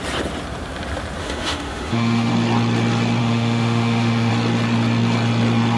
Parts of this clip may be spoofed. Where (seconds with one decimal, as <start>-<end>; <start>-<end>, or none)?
1.2-2.3; 3.2-4.3